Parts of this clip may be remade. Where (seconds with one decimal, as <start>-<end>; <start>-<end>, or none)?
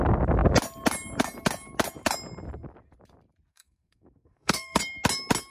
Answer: 3.5-4.8